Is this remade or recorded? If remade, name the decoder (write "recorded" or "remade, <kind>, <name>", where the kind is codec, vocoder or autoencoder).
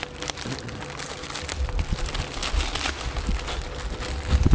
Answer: recorded